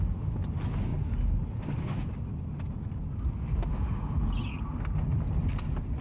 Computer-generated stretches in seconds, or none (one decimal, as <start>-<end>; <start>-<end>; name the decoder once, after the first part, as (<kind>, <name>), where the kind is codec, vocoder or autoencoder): none